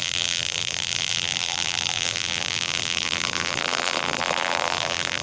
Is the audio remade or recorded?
remade